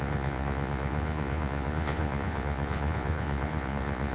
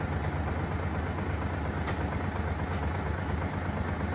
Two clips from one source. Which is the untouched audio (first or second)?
second